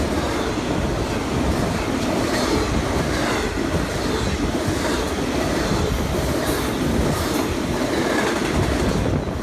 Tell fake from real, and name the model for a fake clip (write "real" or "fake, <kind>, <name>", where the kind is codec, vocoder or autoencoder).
real